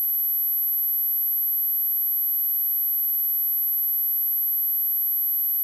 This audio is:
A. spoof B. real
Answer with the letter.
B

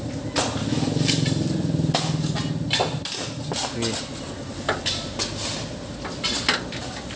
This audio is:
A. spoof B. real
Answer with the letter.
B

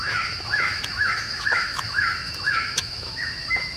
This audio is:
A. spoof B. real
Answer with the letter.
A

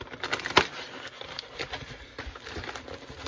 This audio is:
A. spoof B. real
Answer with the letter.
B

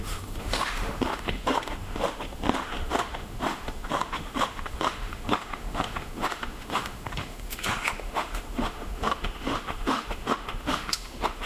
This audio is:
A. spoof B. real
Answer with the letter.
A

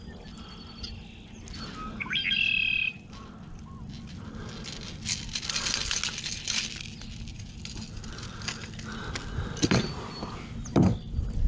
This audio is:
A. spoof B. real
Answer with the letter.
B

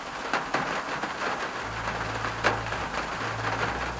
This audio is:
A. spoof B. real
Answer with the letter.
B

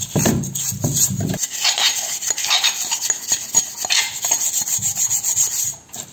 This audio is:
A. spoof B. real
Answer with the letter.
B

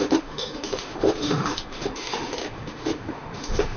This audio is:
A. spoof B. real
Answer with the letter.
A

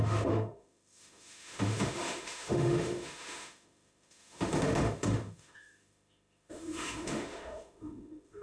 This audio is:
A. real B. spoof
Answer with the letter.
B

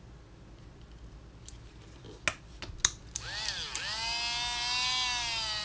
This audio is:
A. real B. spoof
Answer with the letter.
A